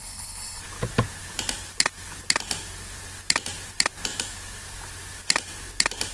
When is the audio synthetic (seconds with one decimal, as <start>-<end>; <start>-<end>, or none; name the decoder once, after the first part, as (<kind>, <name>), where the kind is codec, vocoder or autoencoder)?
0.0-0.6 (codec, HILCodec)

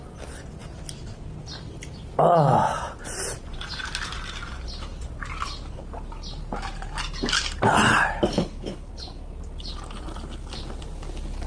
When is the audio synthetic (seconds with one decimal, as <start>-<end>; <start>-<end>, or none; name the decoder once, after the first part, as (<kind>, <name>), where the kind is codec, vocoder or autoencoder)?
8.3-8.9 (codec, HILCodec)

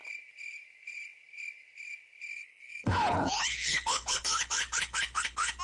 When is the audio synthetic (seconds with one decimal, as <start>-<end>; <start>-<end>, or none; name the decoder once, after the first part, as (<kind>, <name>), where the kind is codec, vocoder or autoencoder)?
2.3-5.6 (codec, HILCodec)